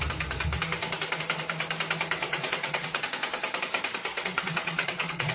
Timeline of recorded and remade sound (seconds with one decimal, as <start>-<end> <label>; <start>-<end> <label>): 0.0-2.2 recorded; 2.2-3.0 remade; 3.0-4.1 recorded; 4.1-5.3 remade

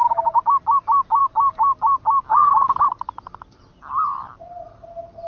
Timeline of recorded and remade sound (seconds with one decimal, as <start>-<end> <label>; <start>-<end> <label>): 0.0-5.3 recorded

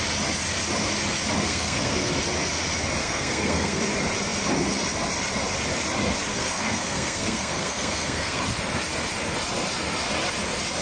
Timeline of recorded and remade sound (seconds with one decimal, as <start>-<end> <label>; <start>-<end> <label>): 0.0-1.5 recorded; 1.5-2.1 remade; 2.1-3.0 recorded; 3.0-3.8 remade; 3.8-6.3 recorded; 6.3-8.4 remade; 8.4-10.8 recorded

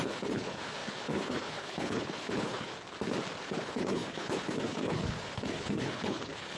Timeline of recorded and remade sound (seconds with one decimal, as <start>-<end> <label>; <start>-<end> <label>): 0.0-2.7 remade; 2.7-3.4 recorded; 3.4-6.6 remade